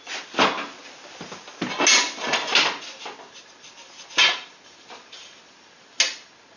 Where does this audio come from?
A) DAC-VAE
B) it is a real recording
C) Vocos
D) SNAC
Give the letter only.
B